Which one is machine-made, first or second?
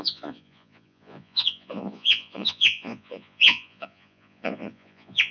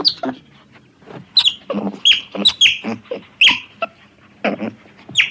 first